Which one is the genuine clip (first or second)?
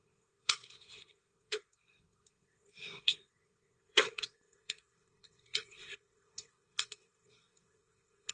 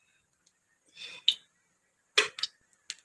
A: second